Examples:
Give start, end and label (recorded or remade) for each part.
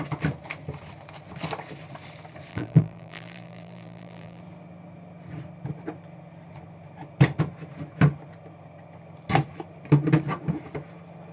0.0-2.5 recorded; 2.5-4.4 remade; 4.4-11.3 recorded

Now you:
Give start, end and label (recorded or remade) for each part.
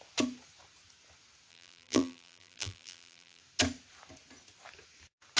0.0-1.5 recorded; 1.5-3.4 remade; 3.4-5.4 recorded